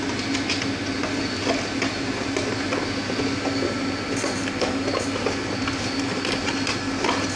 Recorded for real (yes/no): yes